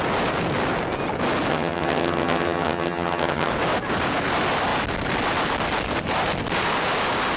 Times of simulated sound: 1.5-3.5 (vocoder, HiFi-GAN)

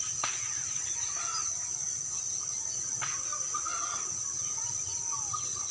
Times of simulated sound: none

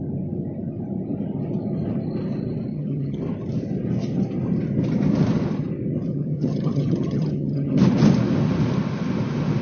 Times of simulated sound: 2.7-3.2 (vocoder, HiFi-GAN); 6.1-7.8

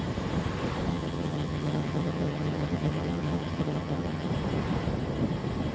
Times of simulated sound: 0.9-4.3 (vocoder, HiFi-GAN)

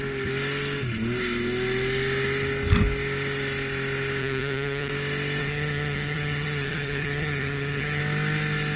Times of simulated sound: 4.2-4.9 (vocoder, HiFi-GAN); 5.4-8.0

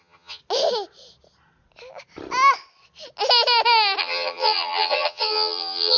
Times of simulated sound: 0.0-0.4 (vocoder, HiFi-GAN); 4.0-6.0

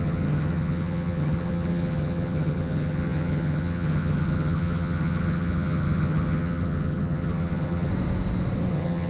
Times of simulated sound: 0.0-7.9 (vocoder, HiFi-GAN); 8.7-9.1

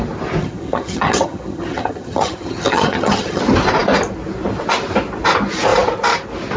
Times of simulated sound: 0.4-3.4 (vocoder, HiFi-GAN)